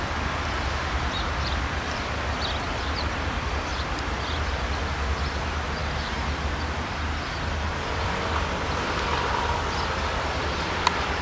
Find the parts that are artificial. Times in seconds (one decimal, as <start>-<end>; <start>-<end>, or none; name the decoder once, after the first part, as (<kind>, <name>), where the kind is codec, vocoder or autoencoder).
0.0-3.7 (vocoder, BigVGAN v2); 4.9-5.8; 7.5-9.1; 9.9-11.2